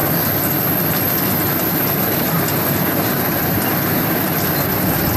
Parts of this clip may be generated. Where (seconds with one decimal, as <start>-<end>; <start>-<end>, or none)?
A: none